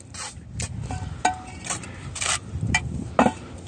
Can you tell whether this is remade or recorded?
remade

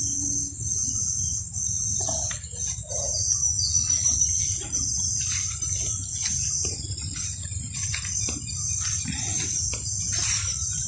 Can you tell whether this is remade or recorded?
recorded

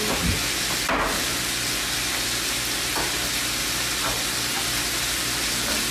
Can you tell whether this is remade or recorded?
recorded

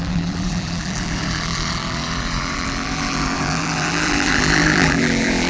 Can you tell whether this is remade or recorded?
remade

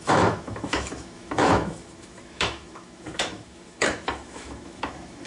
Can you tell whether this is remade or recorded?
remade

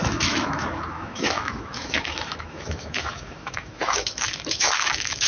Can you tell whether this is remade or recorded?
remade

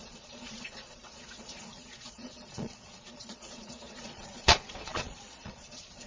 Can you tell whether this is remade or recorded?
remade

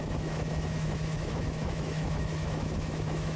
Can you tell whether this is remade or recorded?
remade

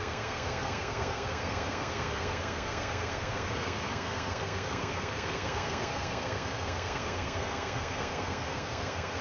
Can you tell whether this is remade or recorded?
remade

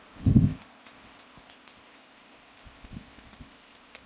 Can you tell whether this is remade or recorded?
remade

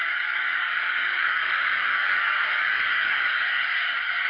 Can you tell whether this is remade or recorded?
remade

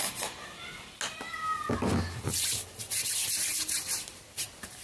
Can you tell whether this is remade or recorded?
recorded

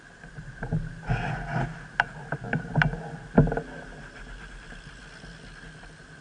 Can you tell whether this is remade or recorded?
recorded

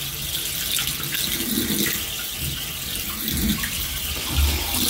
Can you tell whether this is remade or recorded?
recorded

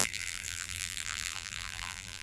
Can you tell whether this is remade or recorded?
remade